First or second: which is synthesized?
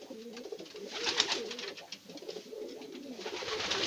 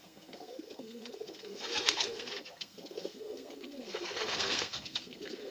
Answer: second